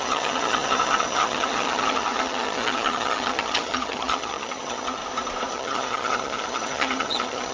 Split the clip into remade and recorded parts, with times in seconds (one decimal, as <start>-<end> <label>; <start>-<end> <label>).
0.0-5.0 remade; 5.0-5.5 recorded; 5.5-7.5 remade